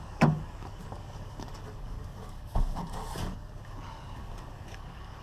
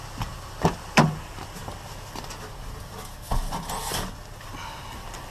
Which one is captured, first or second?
second